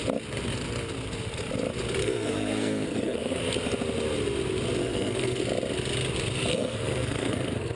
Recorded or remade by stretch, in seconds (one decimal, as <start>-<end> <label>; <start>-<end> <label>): 0.0-2.0 recorded; 2.0-3.4 remade; 3.4-4.8 recorded; 4.8-5.4 remade; 5.4-6.5 recorded; 6.5-7.8 remade